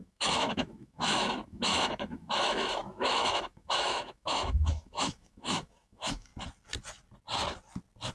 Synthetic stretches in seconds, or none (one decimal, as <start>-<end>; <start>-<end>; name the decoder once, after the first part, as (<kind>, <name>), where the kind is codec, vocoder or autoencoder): 0.0-6.3 (autoencoder, DAC-VAE)